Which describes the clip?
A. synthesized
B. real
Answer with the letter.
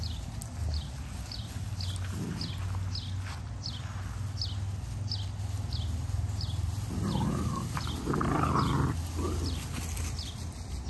B